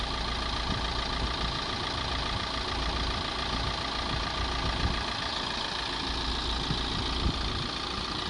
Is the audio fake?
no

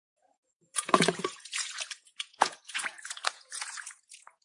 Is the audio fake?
yes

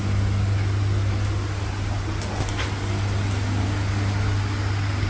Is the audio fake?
no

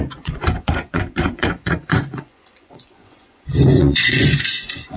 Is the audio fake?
yes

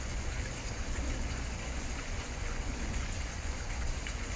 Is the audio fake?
yes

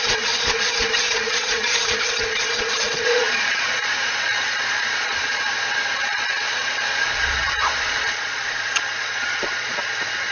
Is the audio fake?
yes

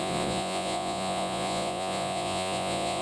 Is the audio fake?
yes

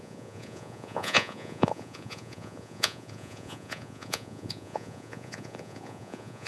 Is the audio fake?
yes